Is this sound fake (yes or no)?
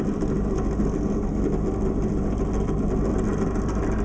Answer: no